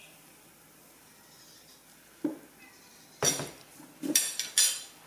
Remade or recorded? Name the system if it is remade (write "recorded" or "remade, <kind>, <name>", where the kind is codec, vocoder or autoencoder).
recorded